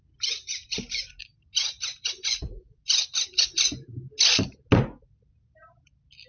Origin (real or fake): real